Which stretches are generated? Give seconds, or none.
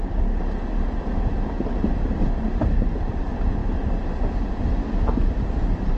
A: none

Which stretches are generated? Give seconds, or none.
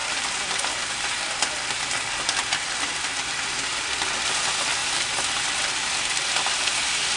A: 0.0-4.3 (vocoder, BigVGAN v2); 4.8-7.2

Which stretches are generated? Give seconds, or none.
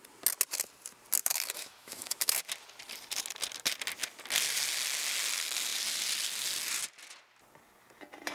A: 1.2-2.4 (autoencoder, DAC-VAE)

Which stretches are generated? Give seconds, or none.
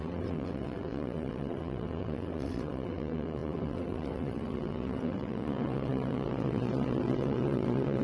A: 0.0-8.0 (vocoder, WaveNeXt)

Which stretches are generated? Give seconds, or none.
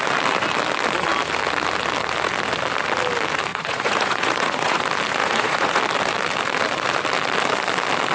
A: 3.5-4.8 (vocoder, Vocos); 5.2-5.8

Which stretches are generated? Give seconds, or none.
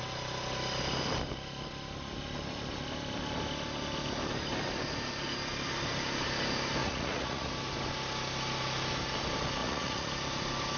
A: 6.8-7.5 (vocoder, Vocos); 9.6-10.1